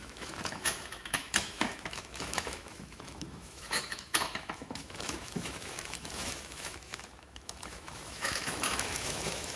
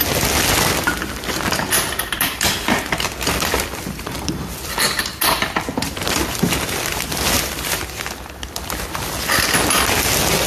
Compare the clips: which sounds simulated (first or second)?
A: first